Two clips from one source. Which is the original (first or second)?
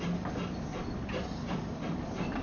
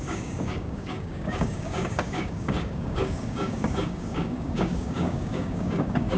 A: first